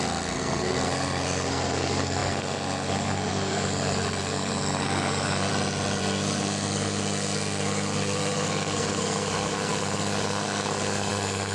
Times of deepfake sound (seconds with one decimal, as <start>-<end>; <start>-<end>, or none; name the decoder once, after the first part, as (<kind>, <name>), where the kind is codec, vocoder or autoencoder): 0.0-5.5 (codec, SNAC); 6.0-11.5